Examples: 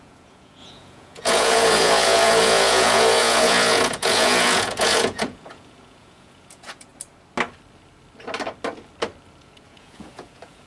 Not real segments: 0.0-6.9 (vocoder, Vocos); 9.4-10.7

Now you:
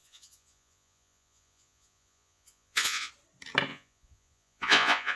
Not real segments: 0.0-3.1 (vocoder, Vocos); 3.7-5.2

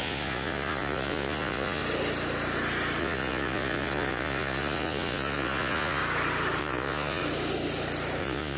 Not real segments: 0.0-1.8 (vocoder, Vocos); 3.0-6.0; 6.6-7.2; 8.2-8.6

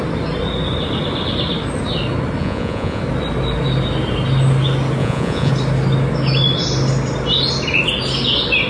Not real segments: 2.4-3.0 (vocoder, Vocos); 5.0-5.5

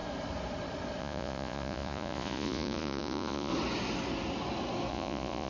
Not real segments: 1.0-3.5 (vocoder, Vocos); 4.9-5.5

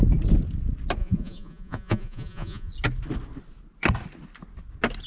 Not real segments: 1.0-2.7 (vocoder, Vocos)